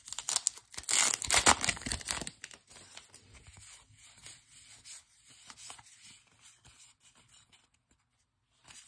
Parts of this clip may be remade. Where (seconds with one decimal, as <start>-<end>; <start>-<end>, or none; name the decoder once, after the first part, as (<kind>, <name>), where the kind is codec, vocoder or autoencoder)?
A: none